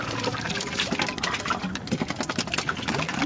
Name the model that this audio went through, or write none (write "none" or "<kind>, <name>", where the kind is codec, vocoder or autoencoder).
none